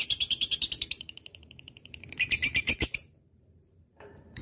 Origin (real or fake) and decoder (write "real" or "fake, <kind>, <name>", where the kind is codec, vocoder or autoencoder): fake, vocoder, BigVGAN v2